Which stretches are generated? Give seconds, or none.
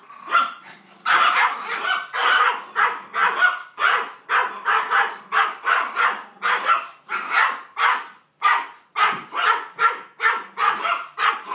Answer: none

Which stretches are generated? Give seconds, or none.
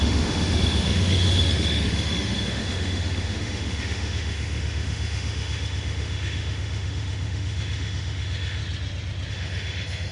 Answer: 0.0-8.6 (autoencoder, DAC-VAE); 9.3-10.1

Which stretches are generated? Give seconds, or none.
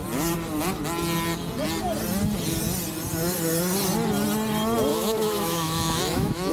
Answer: 4.9-6.5 (autoencoder, DAC-VAE)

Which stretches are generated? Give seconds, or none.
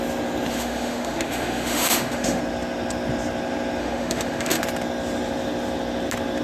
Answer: 0.5-2.4 (autoencoder, DAC-VAE); 3.8-4.6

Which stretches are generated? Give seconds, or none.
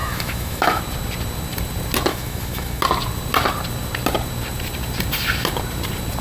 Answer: 0.0-0.8 (autoencoder, DAC-VAE); 2.1-2.8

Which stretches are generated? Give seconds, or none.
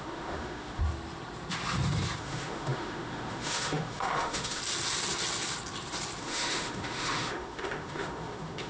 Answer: 0.0-0.8 (autoencoder, DAC-VAE); 2.2-4.6; 6.2-8.7